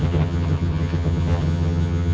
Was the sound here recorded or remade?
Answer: remade